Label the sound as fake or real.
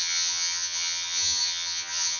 fake